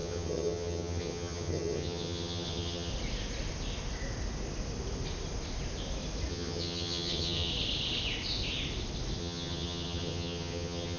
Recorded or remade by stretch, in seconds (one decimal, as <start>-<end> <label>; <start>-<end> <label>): 0.0-2.9 remade; 2.9-6.3 recorded; 6.3-7.5 remade; 7.5-9.2 recorded; 9.2-11.0 remade